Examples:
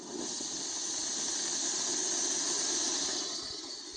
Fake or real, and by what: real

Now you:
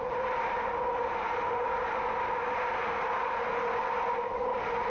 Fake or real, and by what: real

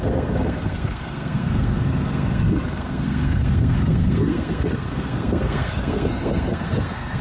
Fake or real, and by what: fake, codec, SNAC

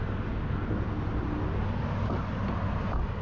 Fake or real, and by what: real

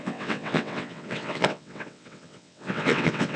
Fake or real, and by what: fake, vocoder, WaveNeXt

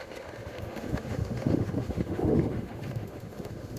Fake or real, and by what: fake, autoencoder, DAC-VAE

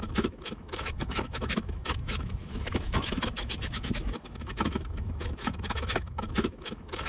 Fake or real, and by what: fake, autoencoder, DAC-VAE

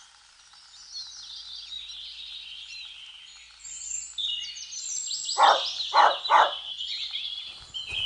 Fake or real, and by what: real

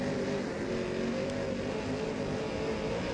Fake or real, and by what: real